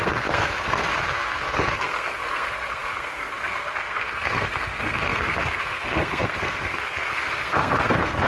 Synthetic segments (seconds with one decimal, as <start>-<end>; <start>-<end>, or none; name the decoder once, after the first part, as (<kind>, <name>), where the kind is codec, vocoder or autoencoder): 0.0-8.3 (codec, SNAC)